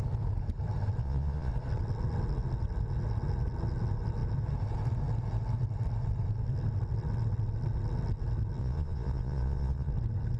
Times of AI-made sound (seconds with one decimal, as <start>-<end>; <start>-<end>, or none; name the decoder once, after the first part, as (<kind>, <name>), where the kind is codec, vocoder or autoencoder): 1.0-1.5 (vocoder, Vocos); 8.6-9.9